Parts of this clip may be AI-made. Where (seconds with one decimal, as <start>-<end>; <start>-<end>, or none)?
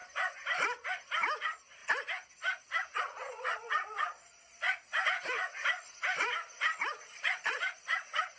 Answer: 1.4-1.8; 3.0-4.9; 6.9-8.4